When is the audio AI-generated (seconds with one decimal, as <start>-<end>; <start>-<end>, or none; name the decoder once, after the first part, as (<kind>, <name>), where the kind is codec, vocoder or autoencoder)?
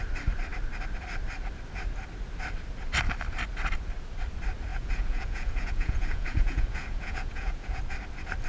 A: 4.7-7.8 (vocoder, Vocos)